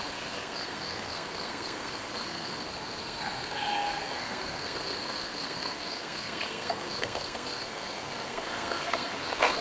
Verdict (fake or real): fake